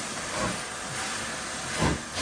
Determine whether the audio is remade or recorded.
recorded